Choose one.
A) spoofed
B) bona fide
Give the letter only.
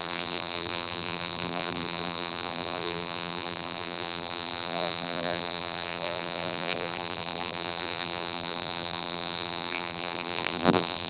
A